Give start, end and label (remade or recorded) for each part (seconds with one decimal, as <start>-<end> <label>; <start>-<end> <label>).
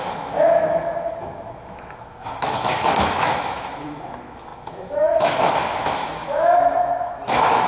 0.0-7.7 remade